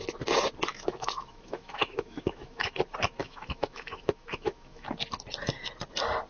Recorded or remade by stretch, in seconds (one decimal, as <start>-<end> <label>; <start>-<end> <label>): 0.0-0.7 recorded; 0.7-2.7 remade; 2.7-3.2 recorded; 3.2-4.9 remade; 4.9-6.3 recorded